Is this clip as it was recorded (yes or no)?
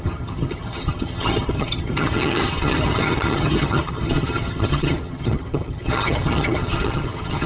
no